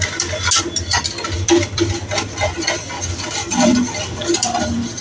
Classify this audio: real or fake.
real